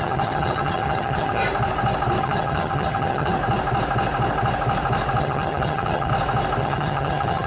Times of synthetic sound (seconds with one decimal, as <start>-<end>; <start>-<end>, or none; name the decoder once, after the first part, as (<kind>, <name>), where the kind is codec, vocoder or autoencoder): 0.0-1.4 (vocoder, HiFi-GAN); 2.2-3.4; 5.2-6.1; 6.6-7.5